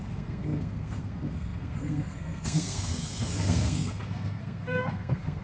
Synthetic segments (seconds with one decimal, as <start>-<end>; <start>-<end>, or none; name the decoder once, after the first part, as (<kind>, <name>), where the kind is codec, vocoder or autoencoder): 0.0-5.4 (codec, SNAC)